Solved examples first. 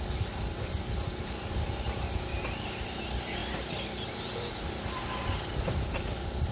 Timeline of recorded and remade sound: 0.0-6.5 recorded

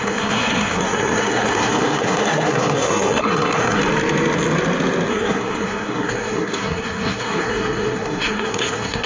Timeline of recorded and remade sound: 0.0-3.8 remade; 3.8-5.1 recorded; 5.1-9.1 remade

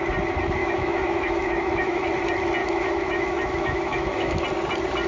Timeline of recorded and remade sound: 0.0-0.6 recorded; 0.6-2.1 remade; 2.1-2.6 recorded; 2.6-4.3 remade; 4.3-5.1 recorded